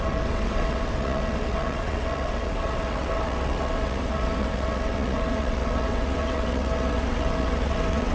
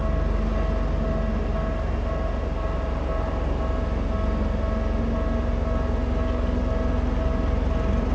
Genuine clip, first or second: second